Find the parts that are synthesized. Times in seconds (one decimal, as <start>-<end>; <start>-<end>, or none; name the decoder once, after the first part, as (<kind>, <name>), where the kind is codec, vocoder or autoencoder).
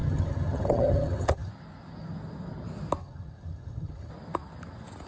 0.0-1.5 (vocoder, HiFi-GAN); 3.0-4.1